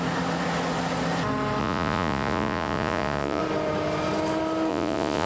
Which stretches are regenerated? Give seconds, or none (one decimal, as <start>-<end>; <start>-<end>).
1.6-3.4; 4.7-5.3